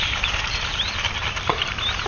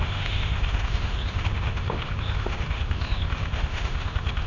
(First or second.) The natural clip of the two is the first